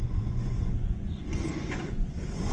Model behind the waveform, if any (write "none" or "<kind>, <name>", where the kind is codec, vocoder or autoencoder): vocoder, Vocos